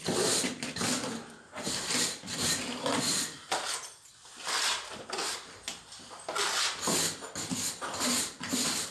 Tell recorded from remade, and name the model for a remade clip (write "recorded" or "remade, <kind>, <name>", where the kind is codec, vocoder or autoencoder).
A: recorded